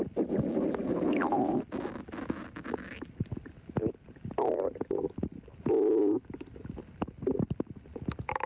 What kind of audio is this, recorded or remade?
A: recorded